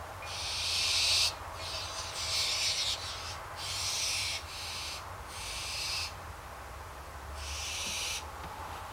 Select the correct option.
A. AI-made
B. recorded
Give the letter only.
B